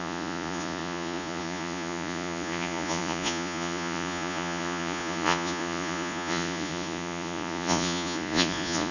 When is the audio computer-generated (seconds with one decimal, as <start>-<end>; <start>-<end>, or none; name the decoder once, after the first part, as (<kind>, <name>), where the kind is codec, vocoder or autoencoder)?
0.0-8.9 (vocoder, Vocos)